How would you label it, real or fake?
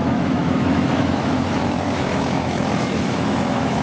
fake